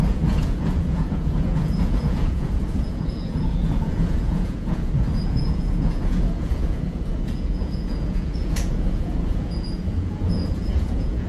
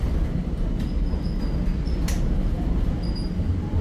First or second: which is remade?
first